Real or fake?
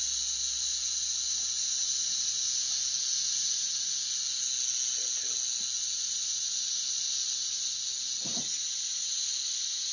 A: real